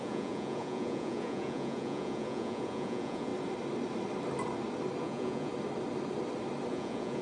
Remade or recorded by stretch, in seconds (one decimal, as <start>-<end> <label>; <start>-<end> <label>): 0.0-3.3 remade; 3.3-5.0 recorded; 5.0-5.5 remade; 5.5-6.7 recorded; 6.7-7.2 remade